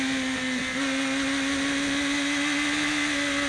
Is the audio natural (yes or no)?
yes